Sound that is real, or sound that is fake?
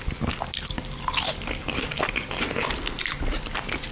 real